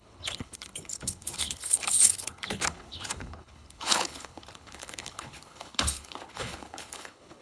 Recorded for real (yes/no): no